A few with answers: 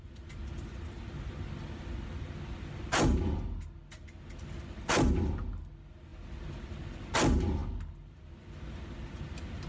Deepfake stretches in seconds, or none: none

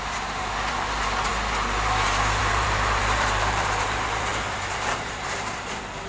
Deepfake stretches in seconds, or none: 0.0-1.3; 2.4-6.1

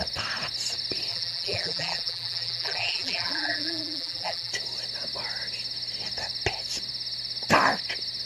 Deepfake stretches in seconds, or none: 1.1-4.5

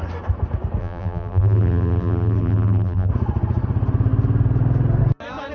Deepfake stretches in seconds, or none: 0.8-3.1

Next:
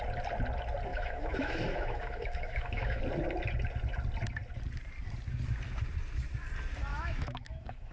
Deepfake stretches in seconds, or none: 0.9-3.0; 6.9-7.9